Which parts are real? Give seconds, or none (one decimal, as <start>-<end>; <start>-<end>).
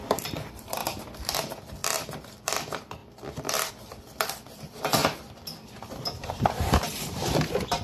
none